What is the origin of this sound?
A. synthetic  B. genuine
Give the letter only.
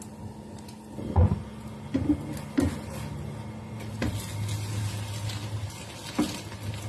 B